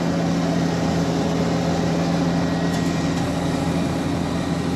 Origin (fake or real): real